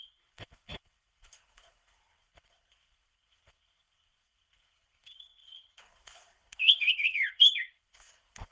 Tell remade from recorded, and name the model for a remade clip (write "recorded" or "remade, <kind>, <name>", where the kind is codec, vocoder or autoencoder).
remade, codec, HILCodec